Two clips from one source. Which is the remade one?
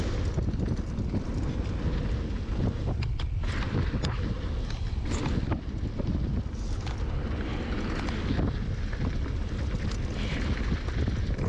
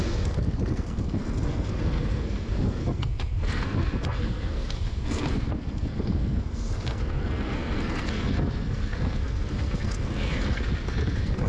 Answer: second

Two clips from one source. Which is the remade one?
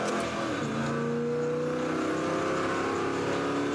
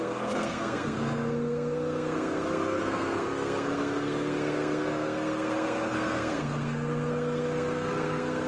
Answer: second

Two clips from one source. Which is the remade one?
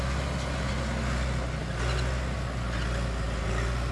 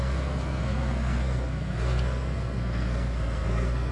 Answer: second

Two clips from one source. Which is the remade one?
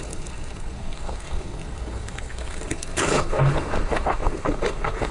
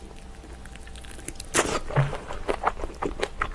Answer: first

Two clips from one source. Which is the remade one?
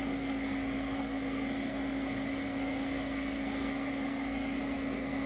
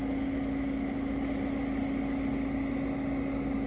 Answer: first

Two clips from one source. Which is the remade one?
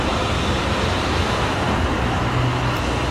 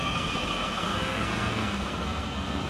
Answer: second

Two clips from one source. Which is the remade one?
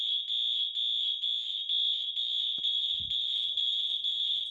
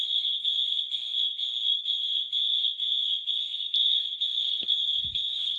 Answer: second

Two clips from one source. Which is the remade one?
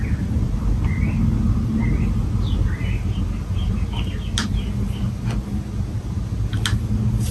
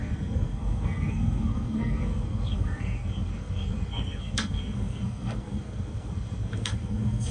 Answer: second